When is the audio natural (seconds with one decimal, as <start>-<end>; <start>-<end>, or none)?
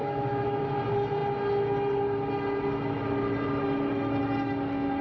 0.6-5.0